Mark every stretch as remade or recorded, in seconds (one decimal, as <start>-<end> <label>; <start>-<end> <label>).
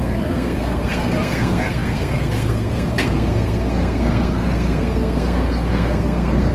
0.0-6.5 remade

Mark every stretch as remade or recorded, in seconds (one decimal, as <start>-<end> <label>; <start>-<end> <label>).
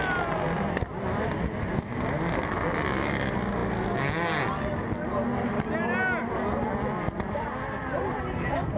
0.0-8.8 recorded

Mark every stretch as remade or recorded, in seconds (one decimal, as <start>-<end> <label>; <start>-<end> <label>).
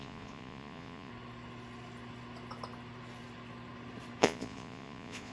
0.0-1.1 remade; 1.1-4.2 recorded; 4.2-5.3 remade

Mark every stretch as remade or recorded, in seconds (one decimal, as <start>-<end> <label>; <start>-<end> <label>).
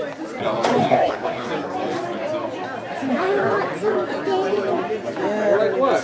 0.0-0.8 recorded; 0.8-1.5 remade; 1.5-6.0 recorded